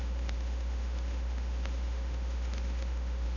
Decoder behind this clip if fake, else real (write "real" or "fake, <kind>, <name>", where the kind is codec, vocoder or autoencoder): fake, autoencoder, DAC-VAE